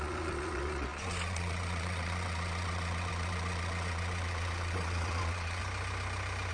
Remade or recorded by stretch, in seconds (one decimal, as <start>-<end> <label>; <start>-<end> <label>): 0.0-5.6 remade; 5.6-6.5 recorded